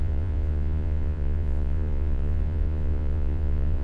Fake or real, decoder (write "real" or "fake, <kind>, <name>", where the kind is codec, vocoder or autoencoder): fake, vocoder, Vocos